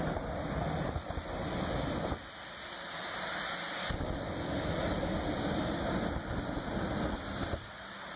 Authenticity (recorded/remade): recorded